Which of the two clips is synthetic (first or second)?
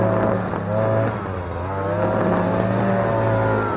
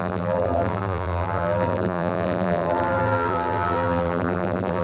second